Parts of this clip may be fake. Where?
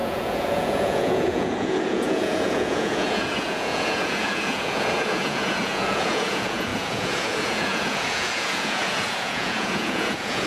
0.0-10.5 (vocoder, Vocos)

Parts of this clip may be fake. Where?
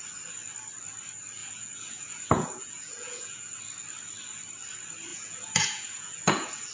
1.4-3.6 (vocoder, Vocos); 5.1-6.7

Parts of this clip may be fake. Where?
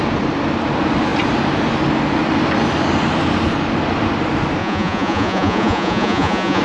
4.6-6.6 (vocoder, Vocos)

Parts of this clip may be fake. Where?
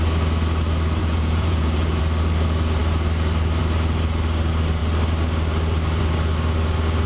1.0-2.0 (vocoder, Vocos)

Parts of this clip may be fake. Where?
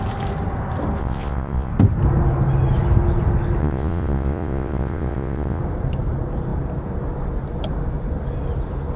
1.0-1.7 (vocoder, Vocos); 3.6-5.6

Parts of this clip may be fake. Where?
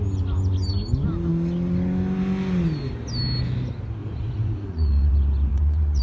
4.0-5.1 (vocoder, Vocos); 5.5-6.0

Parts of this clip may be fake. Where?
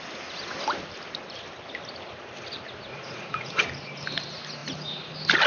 2.9-3.6 (vocoder, Vocos)